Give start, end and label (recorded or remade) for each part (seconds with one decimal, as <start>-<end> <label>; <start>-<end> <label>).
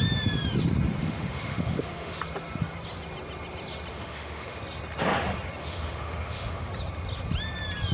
0.0-1.0 recorded; 1.0-2.2 remade; 2.2-3.9 recorded; 3.9-4.6 remade; 4.6-5.6 recorded; 5.6-6.7 remade; 6.7-7.9 recorded